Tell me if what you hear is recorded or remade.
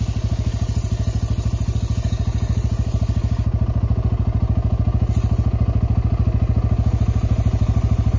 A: recorded